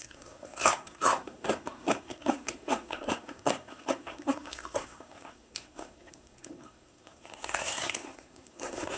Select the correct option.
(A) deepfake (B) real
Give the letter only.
A